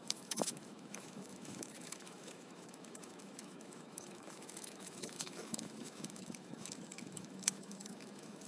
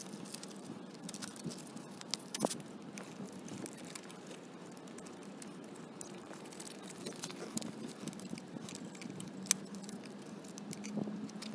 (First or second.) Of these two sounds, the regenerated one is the first